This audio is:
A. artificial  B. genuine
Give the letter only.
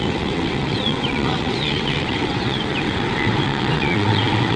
A